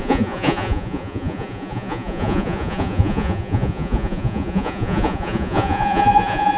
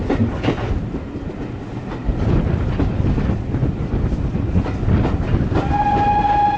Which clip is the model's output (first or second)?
first